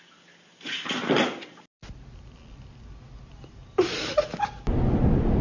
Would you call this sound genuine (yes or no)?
yes